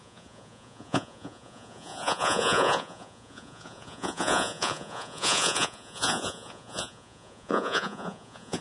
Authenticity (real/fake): fake